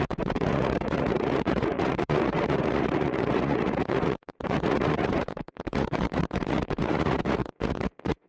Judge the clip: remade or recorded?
remade